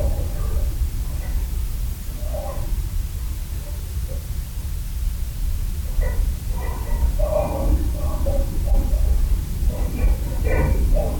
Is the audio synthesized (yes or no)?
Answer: no